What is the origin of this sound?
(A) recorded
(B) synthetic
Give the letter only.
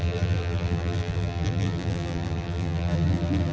B